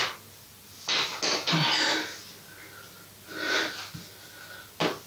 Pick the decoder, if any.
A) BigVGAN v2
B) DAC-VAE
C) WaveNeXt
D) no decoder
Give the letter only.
D